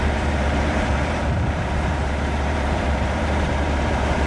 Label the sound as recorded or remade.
remade